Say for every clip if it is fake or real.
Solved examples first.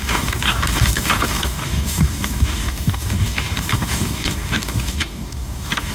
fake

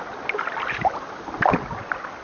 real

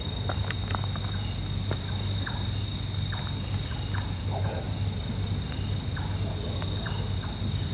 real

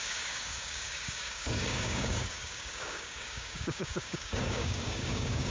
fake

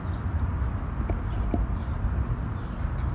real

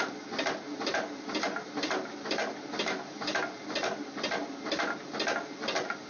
real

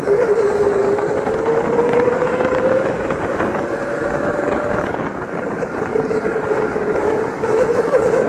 fake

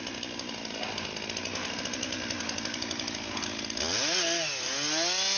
real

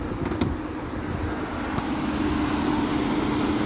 real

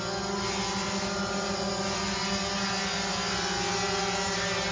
real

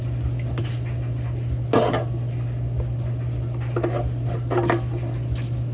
real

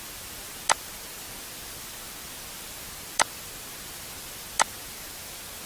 real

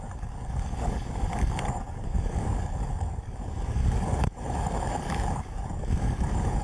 fake